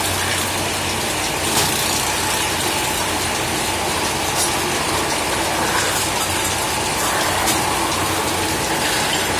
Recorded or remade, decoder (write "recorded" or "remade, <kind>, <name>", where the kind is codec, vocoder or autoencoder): recorded